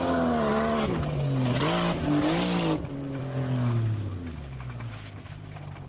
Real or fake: real